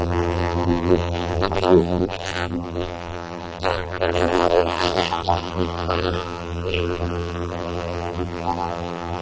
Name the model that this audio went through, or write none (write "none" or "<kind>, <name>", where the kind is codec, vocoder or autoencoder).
vocoder, BigVGAN v2